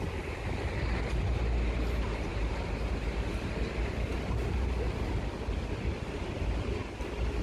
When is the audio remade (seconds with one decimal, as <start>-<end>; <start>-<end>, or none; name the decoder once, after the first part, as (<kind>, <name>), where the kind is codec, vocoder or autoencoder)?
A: none